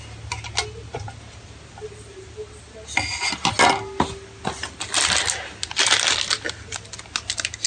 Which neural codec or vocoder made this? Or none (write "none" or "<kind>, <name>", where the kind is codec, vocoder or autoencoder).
none